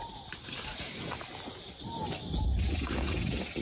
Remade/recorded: recorded